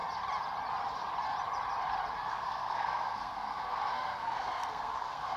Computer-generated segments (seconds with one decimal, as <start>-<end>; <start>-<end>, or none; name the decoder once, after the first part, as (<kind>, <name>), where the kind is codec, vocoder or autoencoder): 2.3-5.4 (codec, SNAC)